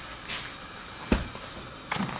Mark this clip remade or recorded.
recorded